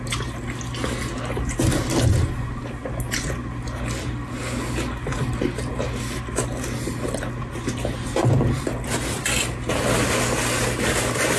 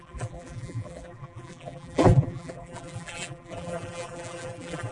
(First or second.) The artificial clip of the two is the second